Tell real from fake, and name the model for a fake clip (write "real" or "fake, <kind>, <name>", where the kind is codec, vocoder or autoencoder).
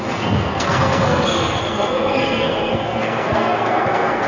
fake, codec, SNAC